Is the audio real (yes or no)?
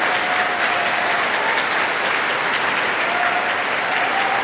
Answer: yes